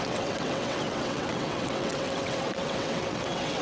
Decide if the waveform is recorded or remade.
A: remade